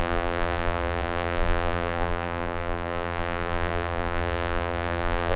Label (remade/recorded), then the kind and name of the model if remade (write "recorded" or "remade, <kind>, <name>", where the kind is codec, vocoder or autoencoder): remade, vocoder, BigVGAN v2